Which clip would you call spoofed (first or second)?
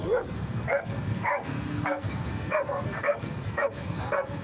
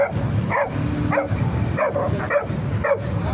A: first